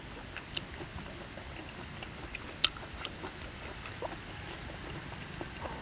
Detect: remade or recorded recorded